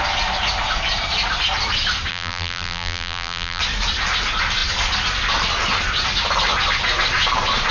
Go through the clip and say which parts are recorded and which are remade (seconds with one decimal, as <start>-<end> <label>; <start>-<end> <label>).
0.0-2.1 recorded; 2.1-3.6 remade; 3.6-7.7 recorded